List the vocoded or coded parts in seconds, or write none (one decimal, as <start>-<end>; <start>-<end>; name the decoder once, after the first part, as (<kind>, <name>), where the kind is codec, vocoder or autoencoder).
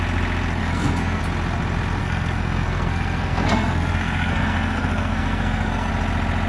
0.6-1.2 (codec, SNAC); 2.0-5.9